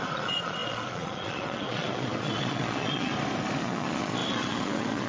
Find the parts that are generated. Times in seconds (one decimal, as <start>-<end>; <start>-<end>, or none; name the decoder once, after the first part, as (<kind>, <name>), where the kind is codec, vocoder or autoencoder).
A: 0.0-3.1 (vocoder, Vocos); 3.6-5.1